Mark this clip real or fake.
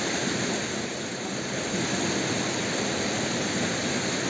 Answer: real